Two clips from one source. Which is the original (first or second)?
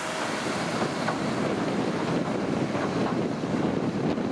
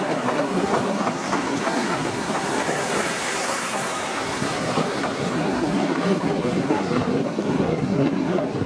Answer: first